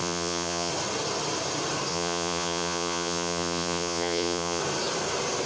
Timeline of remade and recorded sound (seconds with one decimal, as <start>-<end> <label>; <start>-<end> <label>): 0.0-0.7 remade; 0.7-1.9 recorded; 1.9-4.6 remade; 4.6-5.5 recorded